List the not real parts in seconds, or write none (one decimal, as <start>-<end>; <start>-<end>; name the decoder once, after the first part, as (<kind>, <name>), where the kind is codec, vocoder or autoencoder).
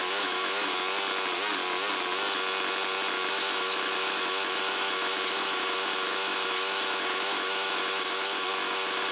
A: 0.0-0.7 (autoencoder, DAC-VAE); 3.3-9.1